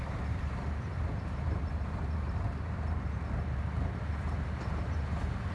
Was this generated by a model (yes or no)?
yes